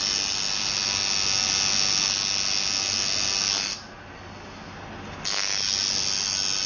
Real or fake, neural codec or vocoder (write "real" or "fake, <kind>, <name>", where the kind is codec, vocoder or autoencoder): real